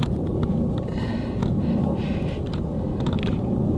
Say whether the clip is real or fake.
real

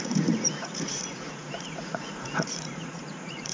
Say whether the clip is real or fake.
fake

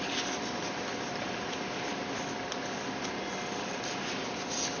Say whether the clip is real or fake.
real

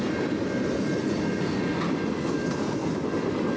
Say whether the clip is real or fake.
real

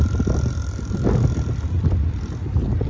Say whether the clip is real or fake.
real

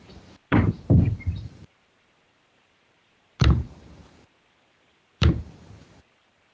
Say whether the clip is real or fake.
fake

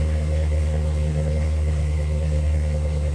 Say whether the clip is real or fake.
fake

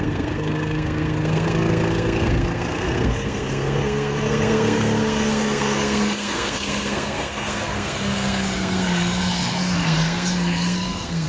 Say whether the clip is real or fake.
fake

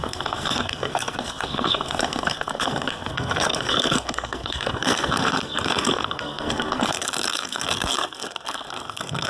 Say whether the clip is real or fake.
fake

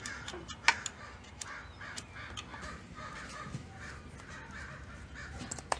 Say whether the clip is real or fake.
real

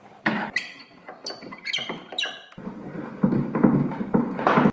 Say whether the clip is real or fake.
fake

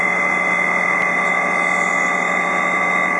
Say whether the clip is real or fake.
real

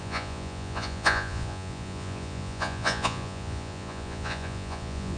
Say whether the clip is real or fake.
fake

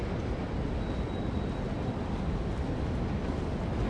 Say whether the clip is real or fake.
real